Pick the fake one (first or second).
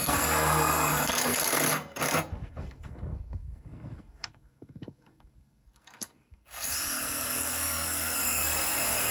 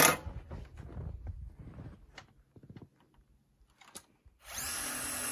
first